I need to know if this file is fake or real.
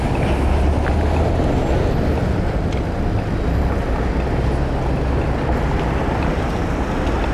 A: real